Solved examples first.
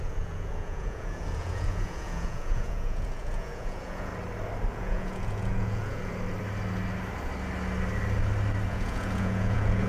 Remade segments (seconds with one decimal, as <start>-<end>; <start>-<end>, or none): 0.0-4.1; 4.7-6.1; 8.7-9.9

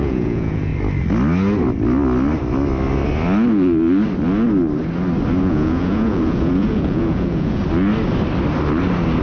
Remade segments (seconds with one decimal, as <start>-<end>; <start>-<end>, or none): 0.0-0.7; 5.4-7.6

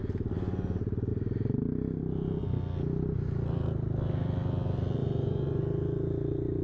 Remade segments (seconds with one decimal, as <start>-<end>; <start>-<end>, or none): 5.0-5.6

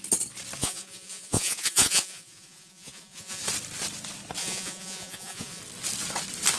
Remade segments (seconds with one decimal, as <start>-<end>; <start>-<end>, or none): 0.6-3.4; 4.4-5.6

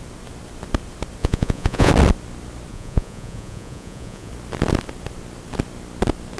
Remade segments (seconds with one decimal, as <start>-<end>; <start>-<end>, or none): 1.2-1.9; 2.7-4.3

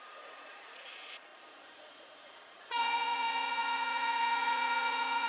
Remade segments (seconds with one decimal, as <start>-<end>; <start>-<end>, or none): 0.0-5.3

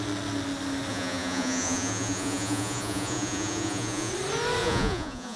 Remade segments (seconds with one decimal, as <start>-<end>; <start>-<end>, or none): 0.9-4.1; 4.6-5.4

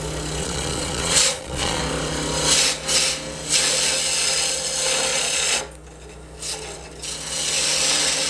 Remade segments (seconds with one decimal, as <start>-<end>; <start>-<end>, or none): 0.4-1.8; 5.1-5.6